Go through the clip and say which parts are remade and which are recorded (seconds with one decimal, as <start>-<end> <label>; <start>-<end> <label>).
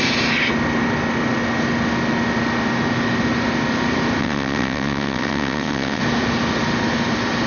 0.0-4.2 recorded; 4.2-6.0 remade; 6.0-7.5 recorded